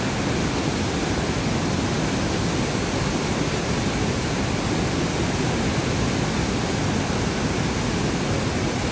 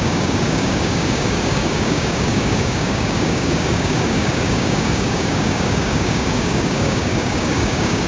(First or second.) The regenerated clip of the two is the second